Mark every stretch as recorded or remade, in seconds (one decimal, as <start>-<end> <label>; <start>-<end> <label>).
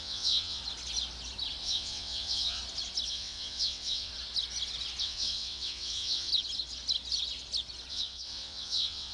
0.0-0.6 remade; 0.6-1.6 recorded; 1.6-2.6 remade; 2.6-3.1 recorded; 3.1-4.1 remade; 4.1-5.0 recorded; 5.0-6.3 remade; 6.3-7.9 recorded; 7.9-9.1 remade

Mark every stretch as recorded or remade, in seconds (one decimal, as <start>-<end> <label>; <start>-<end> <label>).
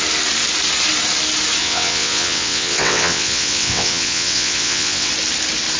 0.0-1.6 recorded; 1.6-5.1 remade; 5.1-5.8 recorded